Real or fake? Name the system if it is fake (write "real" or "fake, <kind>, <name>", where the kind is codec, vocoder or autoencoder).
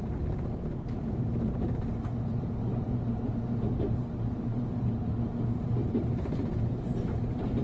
fake, vocoder, BigVGAN v2